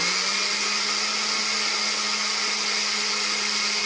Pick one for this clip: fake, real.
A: real